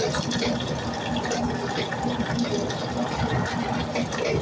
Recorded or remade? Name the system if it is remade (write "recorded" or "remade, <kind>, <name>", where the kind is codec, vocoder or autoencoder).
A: recorded